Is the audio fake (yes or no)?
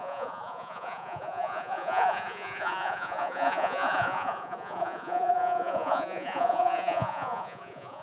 yes